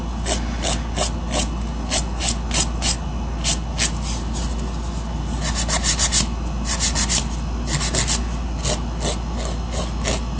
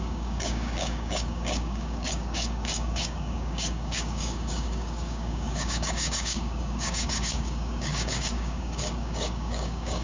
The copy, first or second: second